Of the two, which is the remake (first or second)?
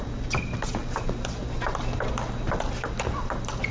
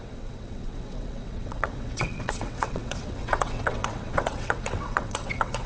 second